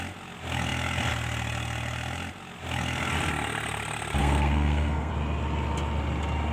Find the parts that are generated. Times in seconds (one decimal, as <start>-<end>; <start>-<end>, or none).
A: 4.2-5.1